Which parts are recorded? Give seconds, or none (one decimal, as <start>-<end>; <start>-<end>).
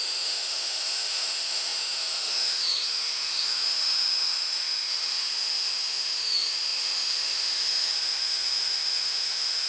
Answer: none